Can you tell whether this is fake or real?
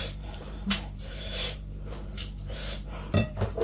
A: fake